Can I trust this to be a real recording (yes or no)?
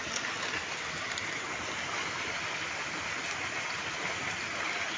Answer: yes